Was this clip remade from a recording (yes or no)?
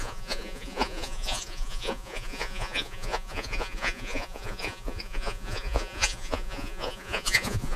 yes